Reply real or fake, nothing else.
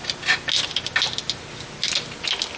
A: real